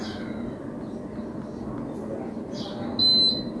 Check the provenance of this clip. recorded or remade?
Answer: recorded